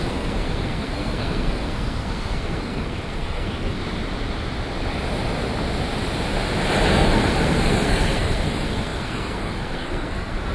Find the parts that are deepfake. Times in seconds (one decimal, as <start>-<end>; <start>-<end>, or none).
0.0-3.8; 6.9-10.5